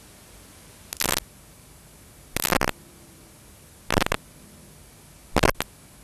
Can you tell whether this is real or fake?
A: real